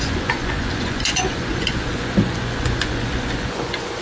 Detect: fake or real fake